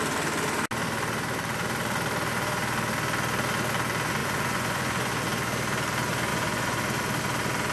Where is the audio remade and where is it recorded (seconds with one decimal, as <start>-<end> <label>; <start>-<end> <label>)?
0.0-4.2 recorded; 4.2-5.1 remade; 5.1-6.3 recorded; 6.3-6.8 remade; 6.8-7.7 recorded